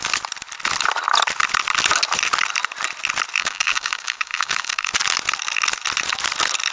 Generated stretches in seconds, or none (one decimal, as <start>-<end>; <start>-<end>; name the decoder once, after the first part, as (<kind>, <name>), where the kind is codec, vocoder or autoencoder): 3.4-4.9 (codec, DAC)